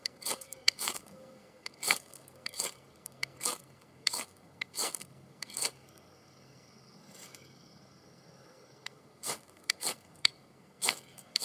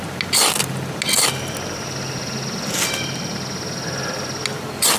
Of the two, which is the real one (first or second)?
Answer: second